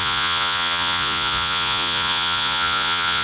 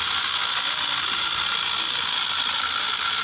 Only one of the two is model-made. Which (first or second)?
first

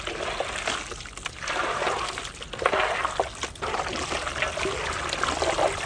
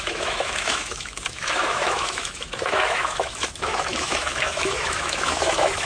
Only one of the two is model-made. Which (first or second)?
second